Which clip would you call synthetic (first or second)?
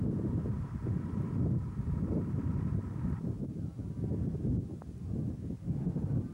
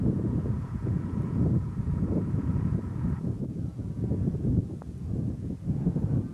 second